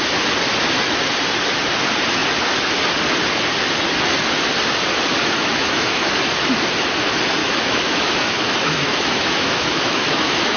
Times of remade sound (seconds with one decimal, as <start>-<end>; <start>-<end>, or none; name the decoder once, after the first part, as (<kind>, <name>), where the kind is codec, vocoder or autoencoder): 5.2-6.2 (autoencoder, DAC-VAE); 7.4-10.6

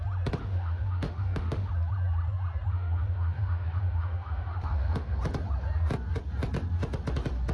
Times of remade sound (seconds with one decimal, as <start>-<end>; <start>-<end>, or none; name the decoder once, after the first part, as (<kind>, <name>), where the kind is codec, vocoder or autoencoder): 0.4-1.7 (autoencoder, DAC-VAE); 2.7-5.2

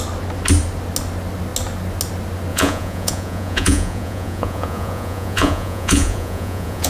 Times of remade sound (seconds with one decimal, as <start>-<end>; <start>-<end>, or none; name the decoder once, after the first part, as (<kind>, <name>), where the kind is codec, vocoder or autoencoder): 2.5-6.9 (vocoder, Vocos)

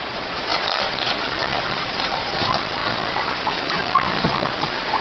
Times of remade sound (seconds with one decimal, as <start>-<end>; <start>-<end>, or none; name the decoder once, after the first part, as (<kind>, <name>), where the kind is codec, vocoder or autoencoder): 0.0-5.0 (vocoder, Vocos)

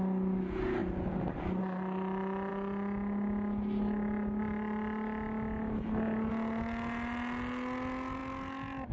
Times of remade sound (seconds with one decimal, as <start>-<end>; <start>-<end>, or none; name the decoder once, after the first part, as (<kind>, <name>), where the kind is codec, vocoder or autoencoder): none